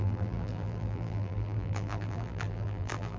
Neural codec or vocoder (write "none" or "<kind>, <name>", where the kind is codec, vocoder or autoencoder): vocoder, BigVGAN v2